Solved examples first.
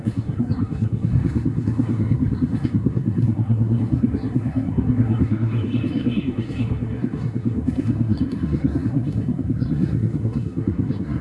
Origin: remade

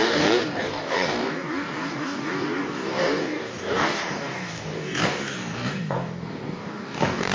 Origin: remade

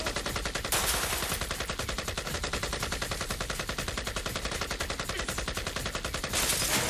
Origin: recorded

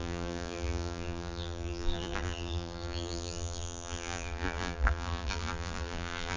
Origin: remade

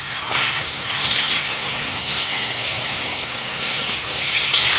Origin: remade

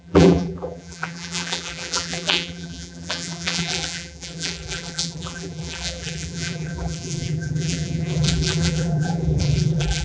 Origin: remade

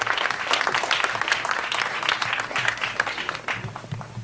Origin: recorded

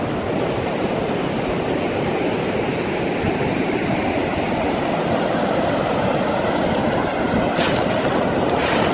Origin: recorded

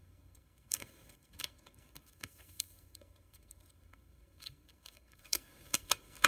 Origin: remade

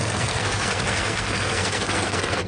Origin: remade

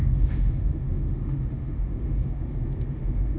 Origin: remade